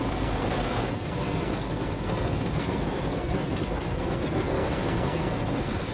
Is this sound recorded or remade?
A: remade